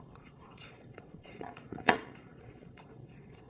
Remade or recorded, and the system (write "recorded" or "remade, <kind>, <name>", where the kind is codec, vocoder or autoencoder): remade, vocoder, Vocos